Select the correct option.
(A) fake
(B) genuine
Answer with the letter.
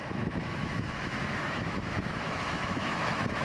A